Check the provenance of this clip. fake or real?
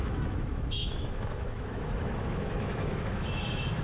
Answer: fake